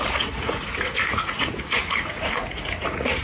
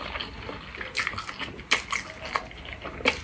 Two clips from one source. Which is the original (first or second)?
second